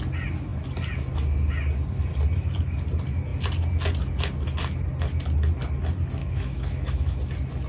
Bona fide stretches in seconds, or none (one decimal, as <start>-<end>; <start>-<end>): 0.0-6.2; 7.2-7.7